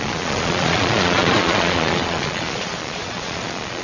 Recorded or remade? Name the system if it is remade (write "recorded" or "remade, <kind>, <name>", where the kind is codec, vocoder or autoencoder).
remade, vocoder, Vocos